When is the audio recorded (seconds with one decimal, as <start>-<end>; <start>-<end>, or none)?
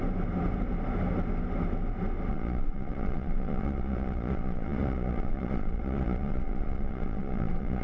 0.0-2.3